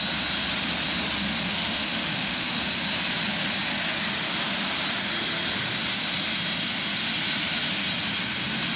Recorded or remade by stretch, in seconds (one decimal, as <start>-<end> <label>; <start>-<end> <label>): 0.0-1.5 recorded; 1.5-2.6 remade; 2.6-8.8 recorded